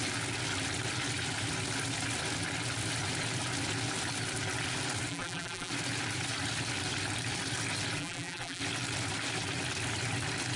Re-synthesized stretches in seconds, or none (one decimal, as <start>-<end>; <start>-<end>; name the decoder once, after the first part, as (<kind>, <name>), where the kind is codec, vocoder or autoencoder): 5.1-5.7 (vocoder, BigVGAN v2); 8.0-8.6